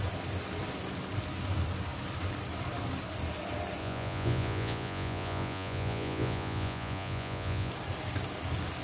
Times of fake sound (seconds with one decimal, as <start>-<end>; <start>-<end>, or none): 3.8-7.7